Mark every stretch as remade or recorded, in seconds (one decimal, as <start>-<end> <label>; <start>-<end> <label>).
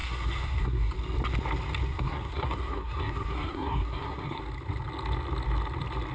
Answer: 0.0-0.9 remade; 0.9-1.9 recorded; 1.9-4.4 remade; 4.4-6.1 recorded